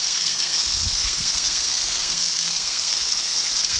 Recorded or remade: remade